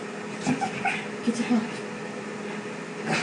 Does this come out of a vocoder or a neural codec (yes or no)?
no